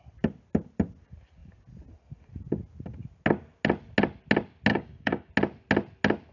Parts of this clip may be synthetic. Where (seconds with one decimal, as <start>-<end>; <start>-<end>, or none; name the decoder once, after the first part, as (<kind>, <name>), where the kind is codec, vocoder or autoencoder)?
4.7-5.3 (codec, DAC)